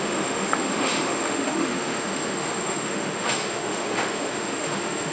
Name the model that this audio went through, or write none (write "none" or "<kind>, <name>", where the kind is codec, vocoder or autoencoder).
autoencoder, DAC-VAE